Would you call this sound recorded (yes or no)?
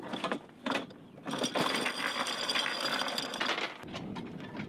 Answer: yes